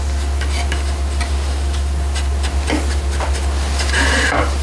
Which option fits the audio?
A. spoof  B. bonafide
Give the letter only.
B